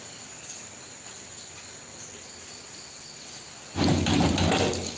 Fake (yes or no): no